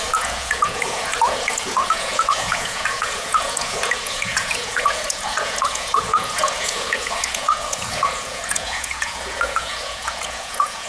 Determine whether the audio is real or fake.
fake